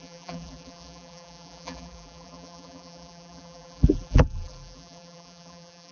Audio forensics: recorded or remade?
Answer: remade